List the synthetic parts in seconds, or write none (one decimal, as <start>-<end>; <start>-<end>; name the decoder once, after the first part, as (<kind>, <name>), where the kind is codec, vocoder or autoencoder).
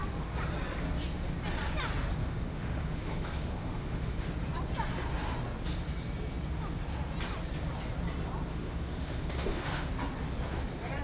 2.2-4.3 (autoencoder, DAC-VAE); 8.5-9.9